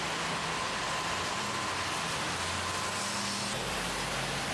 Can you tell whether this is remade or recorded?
recorded